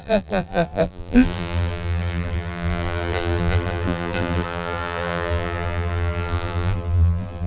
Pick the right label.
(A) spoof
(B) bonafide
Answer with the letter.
A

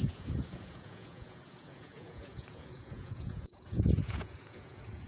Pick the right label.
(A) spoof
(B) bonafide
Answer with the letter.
A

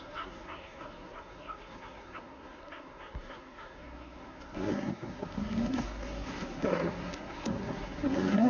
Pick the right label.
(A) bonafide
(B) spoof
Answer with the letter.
B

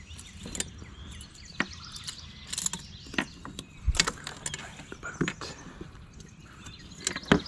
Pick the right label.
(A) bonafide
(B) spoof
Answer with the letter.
A